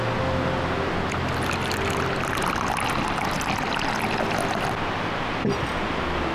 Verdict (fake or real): real